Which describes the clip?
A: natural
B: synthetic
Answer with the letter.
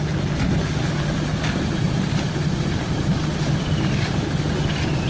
A